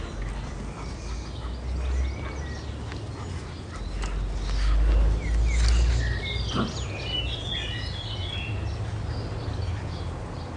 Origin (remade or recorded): recorded